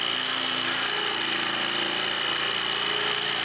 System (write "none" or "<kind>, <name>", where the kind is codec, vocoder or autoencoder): none